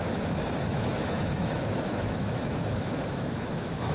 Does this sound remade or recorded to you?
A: remade